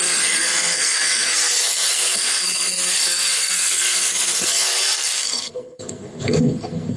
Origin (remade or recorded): remade